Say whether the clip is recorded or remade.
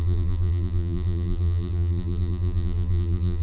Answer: remade